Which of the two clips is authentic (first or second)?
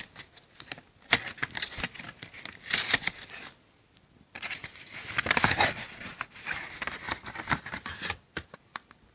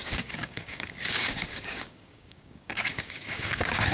first